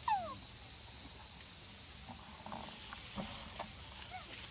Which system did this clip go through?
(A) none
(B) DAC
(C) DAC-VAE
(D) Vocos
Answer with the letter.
A